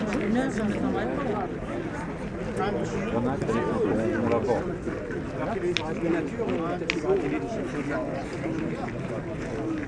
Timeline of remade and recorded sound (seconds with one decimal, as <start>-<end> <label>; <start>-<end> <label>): 0.0-9.9 recorded